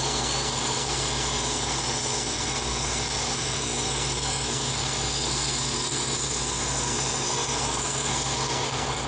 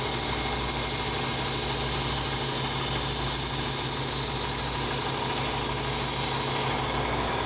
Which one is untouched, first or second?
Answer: second